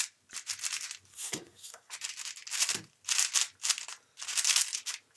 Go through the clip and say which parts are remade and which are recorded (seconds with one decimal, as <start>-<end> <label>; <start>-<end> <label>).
0.0-1.1 recorded; 1.1-1.9 remade; 1.9-5.2 recorded